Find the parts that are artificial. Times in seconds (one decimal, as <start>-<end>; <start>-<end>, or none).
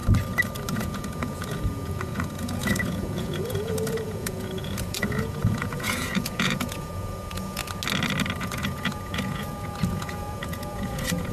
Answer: 0.7-7.6; 8.4-11.3